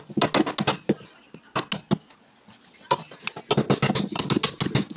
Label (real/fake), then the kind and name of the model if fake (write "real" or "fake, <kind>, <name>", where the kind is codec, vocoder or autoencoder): real